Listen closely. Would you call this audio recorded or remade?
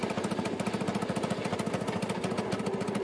recorded